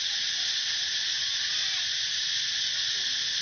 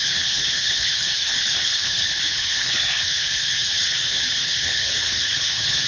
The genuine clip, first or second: first